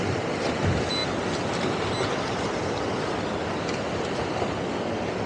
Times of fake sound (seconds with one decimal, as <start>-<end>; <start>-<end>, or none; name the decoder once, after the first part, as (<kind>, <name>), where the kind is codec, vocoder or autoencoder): none